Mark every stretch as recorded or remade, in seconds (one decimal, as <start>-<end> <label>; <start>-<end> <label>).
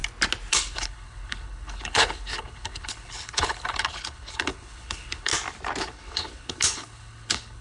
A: 0.0-0.5 recorded; 0.5-5.3 remade; 5.3-5.8 recorded; 5.8-7.6 remade